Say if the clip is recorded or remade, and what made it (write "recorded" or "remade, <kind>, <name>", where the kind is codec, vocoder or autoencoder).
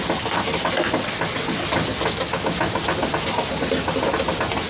recorded